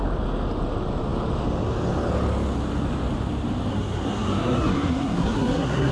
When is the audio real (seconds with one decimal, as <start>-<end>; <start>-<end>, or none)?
0.0-3.7